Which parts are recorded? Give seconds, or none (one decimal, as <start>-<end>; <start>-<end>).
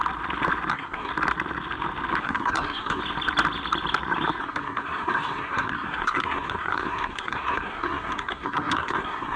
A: 0.0-0.7; 1.1-2.2; 3.0-4.4